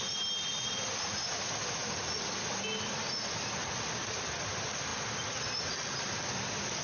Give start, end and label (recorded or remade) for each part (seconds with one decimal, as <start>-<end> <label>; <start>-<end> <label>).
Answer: 0.0-6.8 recorded